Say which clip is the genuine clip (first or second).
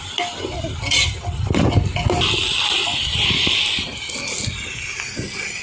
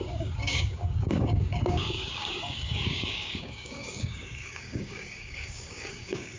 first